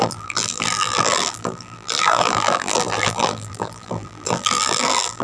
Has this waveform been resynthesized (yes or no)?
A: yes